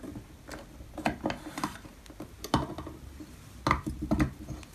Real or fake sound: real